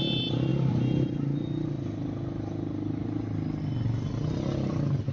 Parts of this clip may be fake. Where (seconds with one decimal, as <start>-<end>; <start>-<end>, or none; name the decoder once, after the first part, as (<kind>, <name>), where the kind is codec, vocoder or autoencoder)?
none